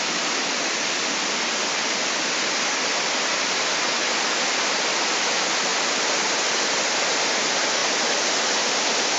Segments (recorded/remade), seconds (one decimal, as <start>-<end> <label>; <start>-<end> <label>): 0.0-9.2 recorded